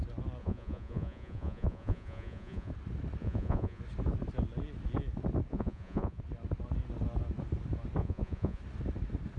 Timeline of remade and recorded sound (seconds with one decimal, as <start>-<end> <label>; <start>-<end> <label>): 0.0-0.4 recorded; 0.4-2.7 remade; 2.7-3.2 recorded; 3.2-3.8 remade; 3.8-5.5 recorded; 5.5-6.2 remade; 6.2-8.0 recorded; 8.0-8.6 remade; 8.6-9.4 recorded